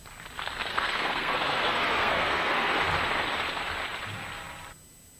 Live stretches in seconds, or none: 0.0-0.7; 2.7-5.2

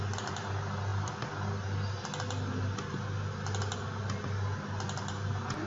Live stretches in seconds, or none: 0.0-5.7

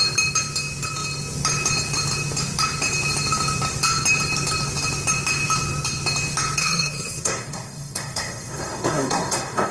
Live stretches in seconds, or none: 0.0-6.6

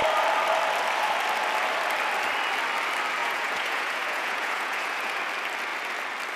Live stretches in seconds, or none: 0.0-3.2; 5.2-6.4

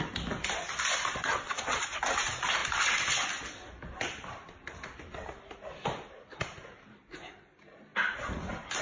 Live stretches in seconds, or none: 0.0-1.2; 1.8-8.8

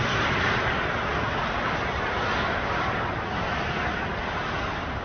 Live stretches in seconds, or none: 0.0-5.0